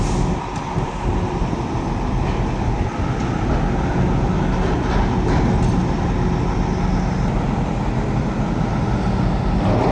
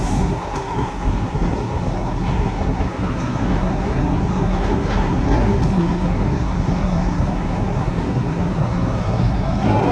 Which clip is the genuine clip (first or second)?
first